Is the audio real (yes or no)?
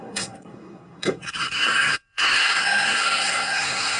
no